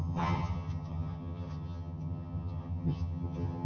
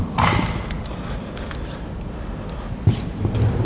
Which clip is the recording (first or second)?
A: second